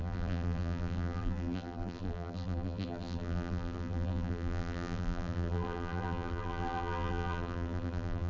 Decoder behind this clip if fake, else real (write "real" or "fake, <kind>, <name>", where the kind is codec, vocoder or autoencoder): fake, vocoder, BigVGAN v2